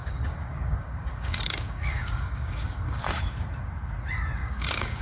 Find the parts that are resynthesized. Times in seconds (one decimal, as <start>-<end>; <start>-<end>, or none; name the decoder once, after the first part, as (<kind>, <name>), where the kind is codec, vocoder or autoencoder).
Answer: 0.0-3.0 (codec, DAC); 4.4-5.0